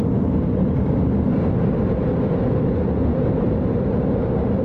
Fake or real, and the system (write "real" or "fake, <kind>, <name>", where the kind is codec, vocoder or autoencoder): real